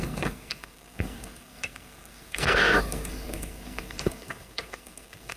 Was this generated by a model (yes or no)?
yes